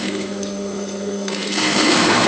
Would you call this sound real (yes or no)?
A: no